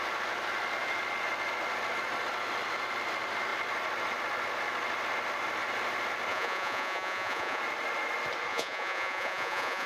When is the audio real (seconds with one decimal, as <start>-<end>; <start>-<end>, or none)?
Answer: 0.0-6.3; 7.6-8.5